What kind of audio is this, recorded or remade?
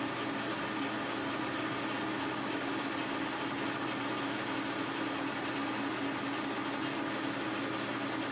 recorded